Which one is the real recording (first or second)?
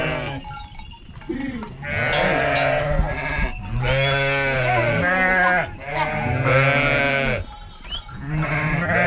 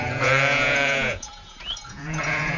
first